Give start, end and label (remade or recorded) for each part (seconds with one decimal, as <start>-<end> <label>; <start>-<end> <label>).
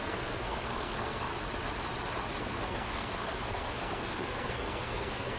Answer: 0.0-1.3 remade; 1.3-2.4 recorded; 2.4-5.4 remade